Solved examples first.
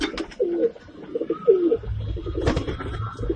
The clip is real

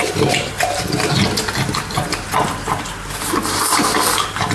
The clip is real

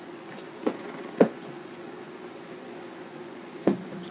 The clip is fake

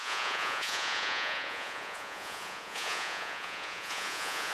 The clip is fake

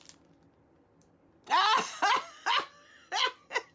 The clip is real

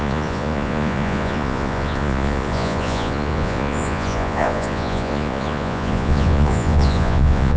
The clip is fake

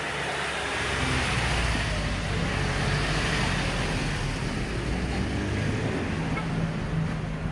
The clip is real